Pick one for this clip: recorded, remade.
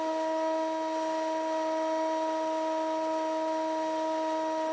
recorded